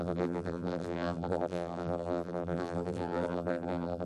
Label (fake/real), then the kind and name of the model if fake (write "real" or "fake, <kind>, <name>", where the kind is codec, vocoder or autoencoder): fake, vocoder, BigVGAN v2